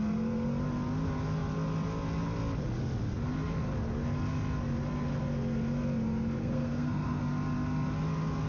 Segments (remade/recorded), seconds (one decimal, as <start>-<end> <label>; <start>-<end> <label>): 0.0-6.4 recorded; 6.4-7.2 remade; 7.2-8.5 recorded